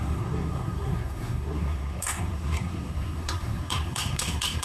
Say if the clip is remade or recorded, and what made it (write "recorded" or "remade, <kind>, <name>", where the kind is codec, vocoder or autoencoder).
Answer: remade, codec, SNAC